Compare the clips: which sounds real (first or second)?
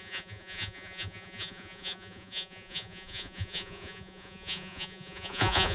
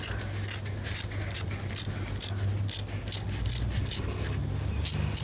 second